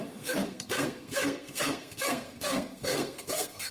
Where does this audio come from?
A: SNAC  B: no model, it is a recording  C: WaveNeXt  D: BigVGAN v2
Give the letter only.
A